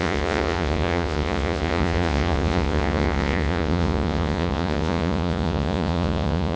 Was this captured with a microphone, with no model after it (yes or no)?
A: no